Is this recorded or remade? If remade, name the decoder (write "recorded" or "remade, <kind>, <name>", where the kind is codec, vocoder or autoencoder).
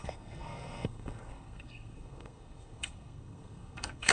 remade, codec, SNAC